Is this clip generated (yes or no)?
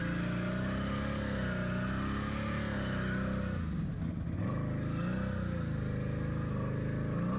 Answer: no